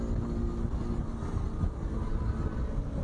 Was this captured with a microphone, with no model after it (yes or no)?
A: yes